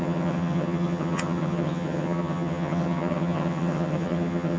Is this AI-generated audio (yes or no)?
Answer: yes